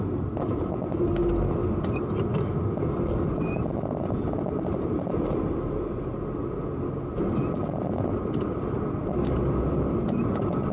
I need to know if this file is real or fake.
real